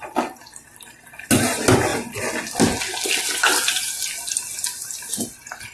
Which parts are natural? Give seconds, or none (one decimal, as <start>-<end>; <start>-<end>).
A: 0.0-5.7